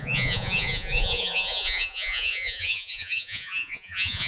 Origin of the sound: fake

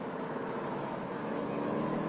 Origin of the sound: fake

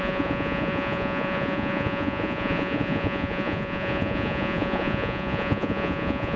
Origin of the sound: fake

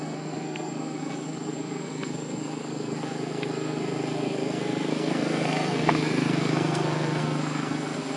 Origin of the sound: fake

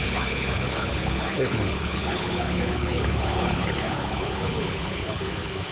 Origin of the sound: fake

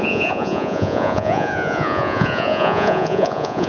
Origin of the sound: fake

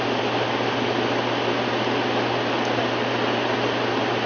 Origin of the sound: real